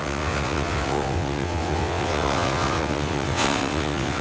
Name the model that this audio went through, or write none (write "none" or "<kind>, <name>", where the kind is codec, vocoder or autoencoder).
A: vocoder, WaveNeXt